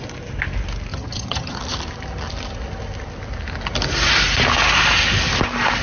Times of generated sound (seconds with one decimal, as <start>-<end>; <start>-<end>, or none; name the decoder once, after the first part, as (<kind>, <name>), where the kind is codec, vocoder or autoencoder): 0.9-1.6 (vocoder, HiFi-GAN)